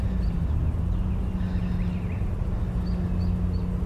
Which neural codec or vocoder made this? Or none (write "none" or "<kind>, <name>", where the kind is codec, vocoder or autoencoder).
none